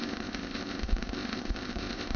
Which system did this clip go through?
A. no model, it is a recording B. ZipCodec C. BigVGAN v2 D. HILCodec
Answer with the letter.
B